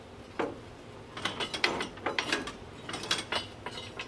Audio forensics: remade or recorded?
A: recorded